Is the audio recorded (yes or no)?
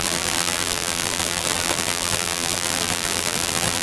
no